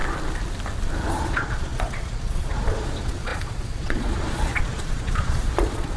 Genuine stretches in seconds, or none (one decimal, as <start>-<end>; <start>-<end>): 0.0-1.1